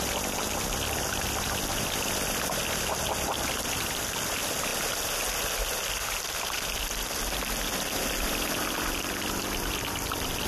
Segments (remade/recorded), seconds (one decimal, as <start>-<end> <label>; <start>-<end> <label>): 0.0-10.5 recorded